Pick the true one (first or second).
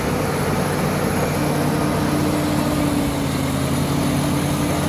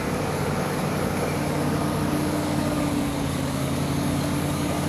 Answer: first